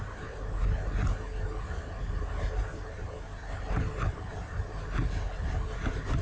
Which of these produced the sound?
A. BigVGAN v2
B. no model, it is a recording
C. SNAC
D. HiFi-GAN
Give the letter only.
B